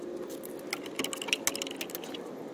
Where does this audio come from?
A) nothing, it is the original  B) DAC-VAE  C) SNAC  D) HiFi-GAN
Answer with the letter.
A